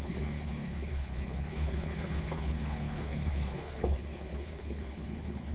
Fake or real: fake